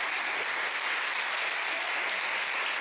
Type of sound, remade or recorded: recorded